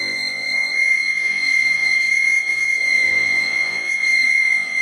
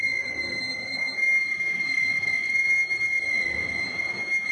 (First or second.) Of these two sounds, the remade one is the first